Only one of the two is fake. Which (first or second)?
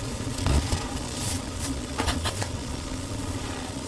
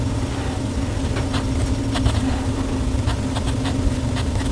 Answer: first